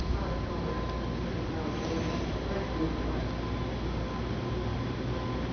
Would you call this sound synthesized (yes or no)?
no